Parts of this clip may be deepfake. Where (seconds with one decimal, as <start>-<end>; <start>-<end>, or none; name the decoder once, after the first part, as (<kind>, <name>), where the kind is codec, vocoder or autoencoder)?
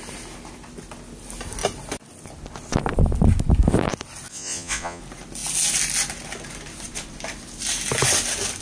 4.3-5.0 (vocoder, Vocos)